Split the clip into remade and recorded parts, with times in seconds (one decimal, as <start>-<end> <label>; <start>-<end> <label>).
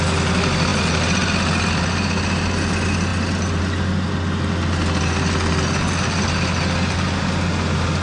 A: 0.0-8.0 recorded